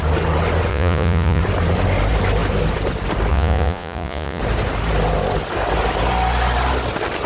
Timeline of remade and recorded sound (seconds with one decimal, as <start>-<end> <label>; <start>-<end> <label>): 0.0-0.7 recorded; 0.7-1.4 remade; 1.4-3.3 recorded; 3.3-4.4 remade; 4.4-7.3 recorded